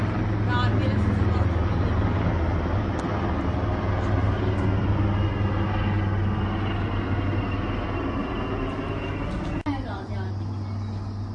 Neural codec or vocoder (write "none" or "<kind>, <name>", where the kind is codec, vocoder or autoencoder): none